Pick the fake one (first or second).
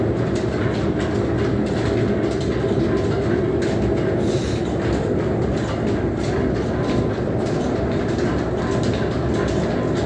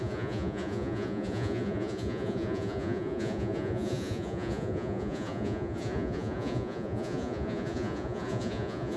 second